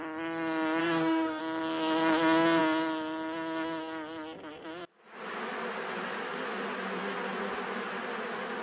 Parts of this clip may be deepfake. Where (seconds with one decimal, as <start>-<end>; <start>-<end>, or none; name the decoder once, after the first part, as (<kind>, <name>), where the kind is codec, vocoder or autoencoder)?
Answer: 0.8-1.4 (codec, DAC)